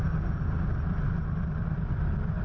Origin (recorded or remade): recorded